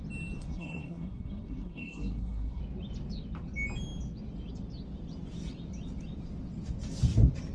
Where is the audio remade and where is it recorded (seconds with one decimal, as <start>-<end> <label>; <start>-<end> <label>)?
0.0-0.4 recorded; 0.4-2.6 remade; 2.6-7.5 recorded